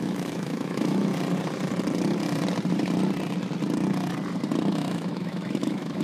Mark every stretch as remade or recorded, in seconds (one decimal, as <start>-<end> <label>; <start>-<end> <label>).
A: 0.0-1.1 remade; 1.1-4.7 recorded; 4.7-6.0 remade